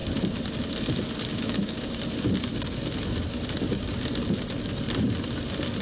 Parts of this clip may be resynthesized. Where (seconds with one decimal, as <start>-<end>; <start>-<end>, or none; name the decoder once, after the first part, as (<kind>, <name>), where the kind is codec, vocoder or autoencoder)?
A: 1.3-2.0 (codec, DAC)